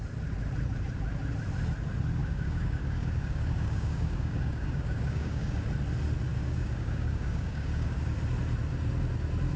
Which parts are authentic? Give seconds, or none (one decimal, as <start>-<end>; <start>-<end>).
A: 0.0-2.2; 5.7-6.3; 8.0-9.6